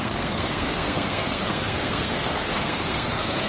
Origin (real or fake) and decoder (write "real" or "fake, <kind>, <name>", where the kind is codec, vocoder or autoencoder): fake, codec, SNAC